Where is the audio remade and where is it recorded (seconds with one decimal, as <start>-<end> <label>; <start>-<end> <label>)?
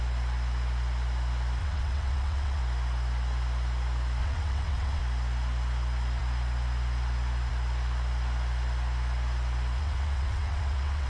0.0-1.6 recorded; 1.6-2.6 remade; 2.6-4.2 recorded; 4.2-5.0 remade; 5.0-9.8 recorded; 9.8-11.1 remade